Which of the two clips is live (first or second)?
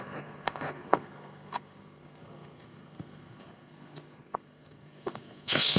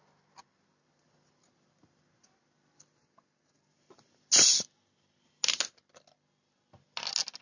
second